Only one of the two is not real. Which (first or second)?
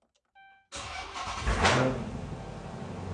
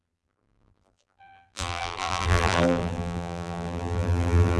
second